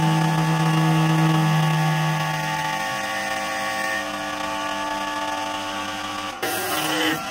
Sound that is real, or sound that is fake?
real